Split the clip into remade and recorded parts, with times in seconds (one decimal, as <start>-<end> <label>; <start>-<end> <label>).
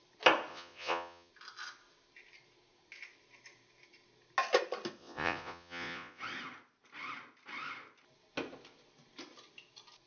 0.0-0.5 recorded; 0.5-1.3 remade; 1.3-5.0 recorded; 5.0-6.2 remade; 6.2-10.1 recorded